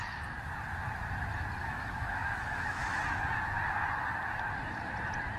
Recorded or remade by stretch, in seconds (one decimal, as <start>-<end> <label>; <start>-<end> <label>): 0.0-1.6 recorded; 1.6-3.0 remade; 3.0-5.4 recorded